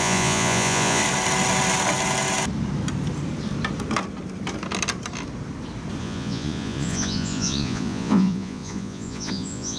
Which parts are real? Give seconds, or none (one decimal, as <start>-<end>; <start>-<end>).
1.0-6.0

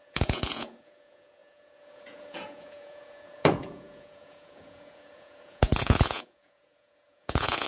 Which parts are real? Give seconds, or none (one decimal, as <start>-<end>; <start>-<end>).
none